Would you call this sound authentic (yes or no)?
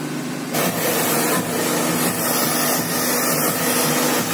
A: yes